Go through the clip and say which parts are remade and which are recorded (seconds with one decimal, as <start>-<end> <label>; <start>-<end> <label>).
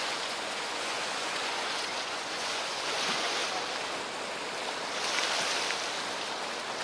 0.0-3.4 remade; 3.4-6.8 recorded